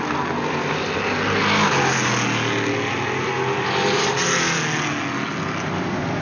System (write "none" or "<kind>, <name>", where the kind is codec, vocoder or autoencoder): none